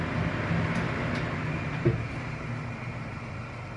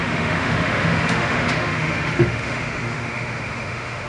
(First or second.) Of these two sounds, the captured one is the first